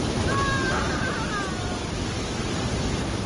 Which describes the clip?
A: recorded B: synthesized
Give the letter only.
A